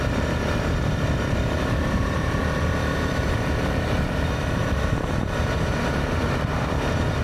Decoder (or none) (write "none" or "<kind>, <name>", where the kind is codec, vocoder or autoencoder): vocoder, BigVGAN v2